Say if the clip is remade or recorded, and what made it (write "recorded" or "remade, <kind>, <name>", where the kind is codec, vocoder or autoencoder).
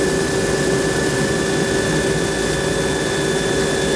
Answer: recorded